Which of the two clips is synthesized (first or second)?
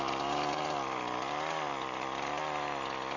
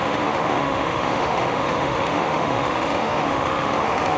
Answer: second